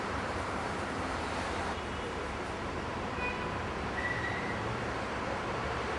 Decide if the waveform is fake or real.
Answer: fake